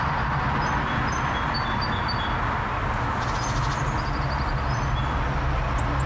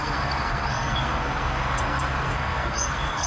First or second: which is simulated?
second